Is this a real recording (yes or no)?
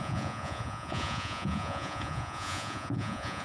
no